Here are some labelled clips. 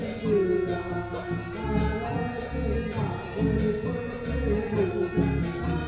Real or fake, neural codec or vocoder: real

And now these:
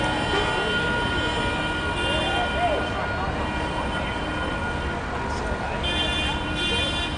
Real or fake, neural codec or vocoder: real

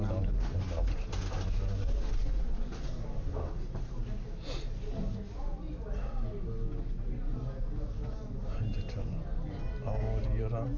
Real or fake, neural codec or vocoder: real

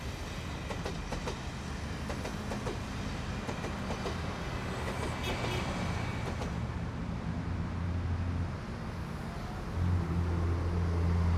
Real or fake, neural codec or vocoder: real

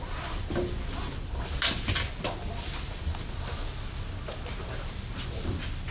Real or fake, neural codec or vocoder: real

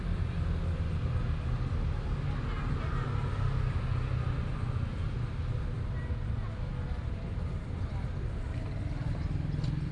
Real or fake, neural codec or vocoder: real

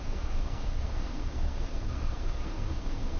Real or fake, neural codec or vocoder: fake, codec, SNAC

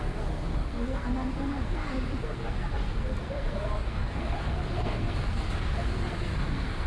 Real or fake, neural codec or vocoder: fake, codec, SNAC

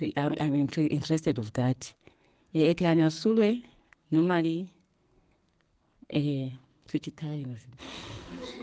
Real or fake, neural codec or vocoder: fake, codec, SNAC